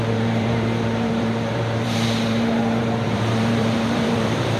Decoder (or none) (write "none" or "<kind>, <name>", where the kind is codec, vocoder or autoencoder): vocoder, BigVGAN v2